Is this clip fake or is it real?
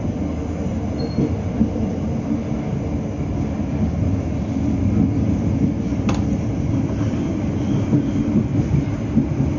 real